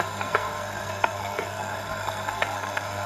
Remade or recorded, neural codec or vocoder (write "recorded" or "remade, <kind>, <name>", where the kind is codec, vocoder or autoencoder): remade, codec, SNAC